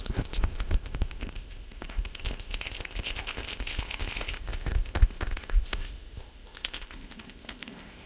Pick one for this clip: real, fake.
fake